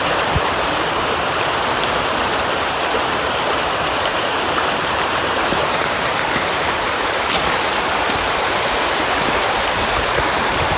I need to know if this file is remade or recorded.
remade